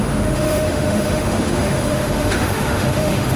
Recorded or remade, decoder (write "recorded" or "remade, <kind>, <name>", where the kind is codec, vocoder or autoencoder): remade, autoencoder, DAC-VAE